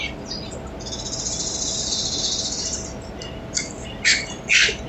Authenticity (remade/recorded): recorded